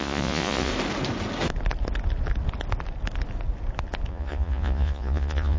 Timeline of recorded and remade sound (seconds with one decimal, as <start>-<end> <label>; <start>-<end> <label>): 0.0-0.7 remade; 0.7-4.1 recorded; 4.1-5.6 remade